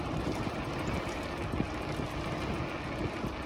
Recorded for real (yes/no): yes